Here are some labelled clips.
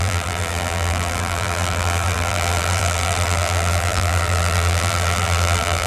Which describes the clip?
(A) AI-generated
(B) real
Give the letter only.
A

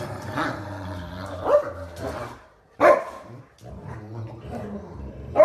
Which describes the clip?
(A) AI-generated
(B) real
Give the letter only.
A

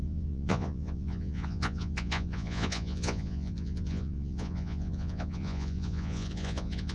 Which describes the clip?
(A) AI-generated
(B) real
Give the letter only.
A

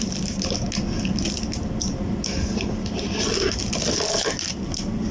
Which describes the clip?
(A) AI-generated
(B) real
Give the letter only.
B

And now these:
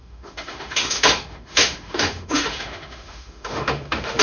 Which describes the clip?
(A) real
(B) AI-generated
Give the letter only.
B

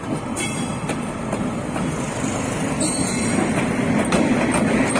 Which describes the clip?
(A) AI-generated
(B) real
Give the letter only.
B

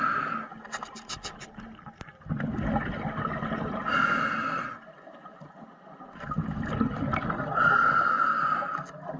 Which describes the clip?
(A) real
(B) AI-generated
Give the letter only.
A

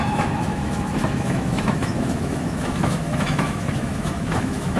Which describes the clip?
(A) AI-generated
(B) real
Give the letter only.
A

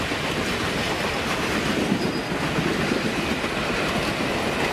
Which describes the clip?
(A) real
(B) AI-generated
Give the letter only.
A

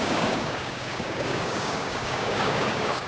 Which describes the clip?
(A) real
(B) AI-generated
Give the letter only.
B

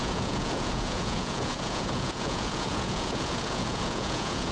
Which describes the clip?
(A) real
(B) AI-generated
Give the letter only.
B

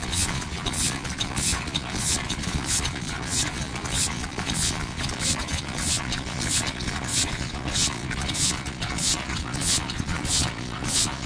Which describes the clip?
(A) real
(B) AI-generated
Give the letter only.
B